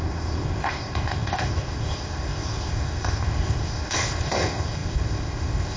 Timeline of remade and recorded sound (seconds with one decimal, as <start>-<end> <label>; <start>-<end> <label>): 0.0-5.8 remade